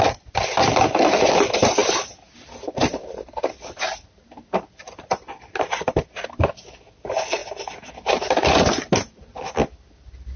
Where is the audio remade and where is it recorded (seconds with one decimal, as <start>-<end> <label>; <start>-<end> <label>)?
0.0-10.4 recorded